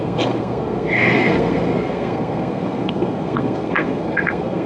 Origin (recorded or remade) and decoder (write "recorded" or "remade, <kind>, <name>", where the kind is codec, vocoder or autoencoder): remade, codec, SNAC